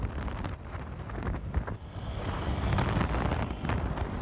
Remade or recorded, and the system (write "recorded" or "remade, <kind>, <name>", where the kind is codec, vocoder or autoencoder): recorded